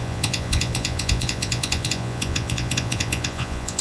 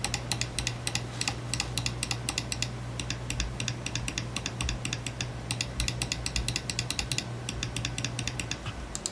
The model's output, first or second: first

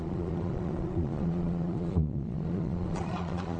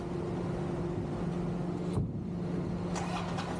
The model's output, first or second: first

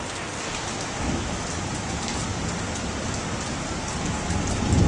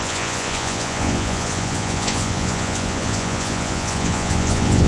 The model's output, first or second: second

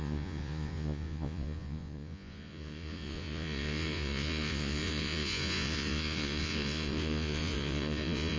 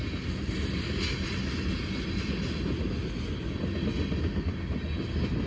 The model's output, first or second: first